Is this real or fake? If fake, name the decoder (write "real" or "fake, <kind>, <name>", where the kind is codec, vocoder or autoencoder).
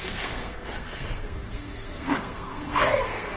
fake, codec, SNAC